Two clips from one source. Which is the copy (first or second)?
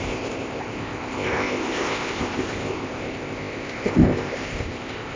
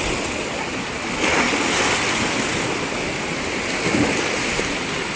first